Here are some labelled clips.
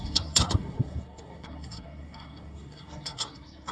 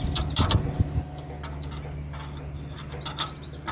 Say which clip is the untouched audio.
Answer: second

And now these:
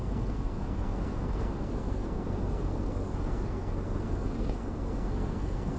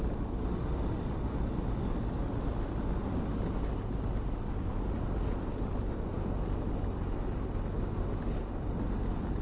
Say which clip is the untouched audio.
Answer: second